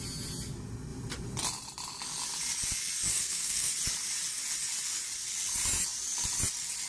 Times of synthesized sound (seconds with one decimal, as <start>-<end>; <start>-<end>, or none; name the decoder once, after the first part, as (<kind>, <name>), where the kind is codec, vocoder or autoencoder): 3.1-3.7 (codec, SNAC)